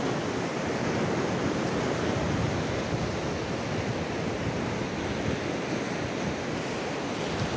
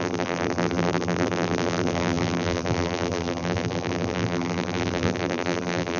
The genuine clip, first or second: first